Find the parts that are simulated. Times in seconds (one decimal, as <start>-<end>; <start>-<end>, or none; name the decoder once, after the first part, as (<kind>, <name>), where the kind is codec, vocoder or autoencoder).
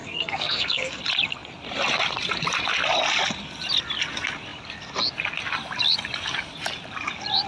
0.0-1.0 (codec, SNAC)